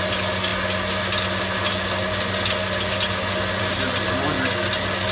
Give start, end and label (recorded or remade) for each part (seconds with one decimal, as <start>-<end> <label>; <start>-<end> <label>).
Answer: 0.0-5.1 recorded